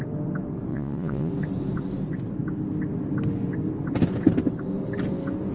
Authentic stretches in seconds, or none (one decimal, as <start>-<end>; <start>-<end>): 0.0-0.7; 1.3-5.5